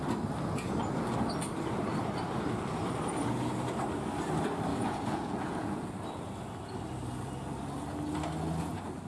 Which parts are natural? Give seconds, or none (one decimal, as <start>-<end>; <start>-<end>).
0.0-4.7; 5.9-9.1